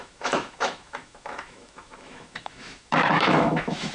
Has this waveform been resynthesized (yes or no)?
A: yes